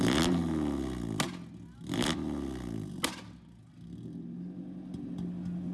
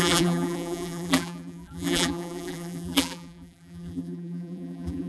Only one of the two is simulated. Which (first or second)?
second